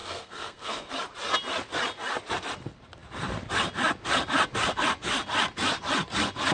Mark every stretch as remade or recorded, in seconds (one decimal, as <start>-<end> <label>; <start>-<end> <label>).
0.0-0.9 remade; 0.9-6.5 recorded